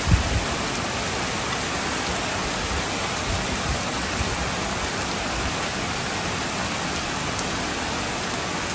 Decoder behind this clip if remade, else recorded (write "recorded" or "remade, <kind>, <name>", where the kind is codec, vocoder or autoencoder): recorded